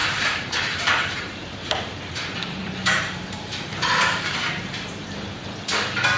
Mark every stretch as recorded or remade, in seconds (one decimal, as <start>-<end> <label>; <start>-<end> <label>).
0.0-5.4 remade; 5.4-6.2 recorded